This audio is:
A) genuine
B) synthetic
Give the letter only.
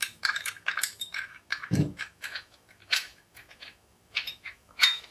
B